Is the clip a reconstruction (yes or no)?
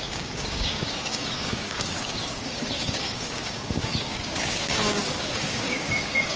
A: yes